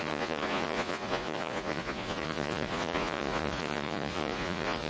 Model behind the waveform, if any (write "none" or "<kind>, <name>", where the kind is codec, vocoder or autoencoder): vocoder, Vocos